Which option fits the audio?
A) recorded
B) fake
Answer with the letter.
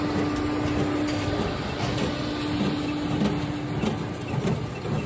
A